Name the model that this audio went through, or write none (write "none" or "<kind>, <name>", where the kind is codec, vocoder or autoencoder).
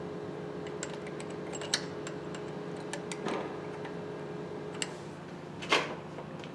none